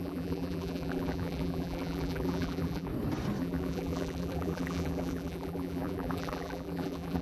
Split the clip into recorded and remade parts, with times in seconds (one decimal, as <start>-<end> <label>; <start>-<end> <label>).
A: 0.0-2.9 remade; 2.9-3.4 recorded; 3.4-7.2 remade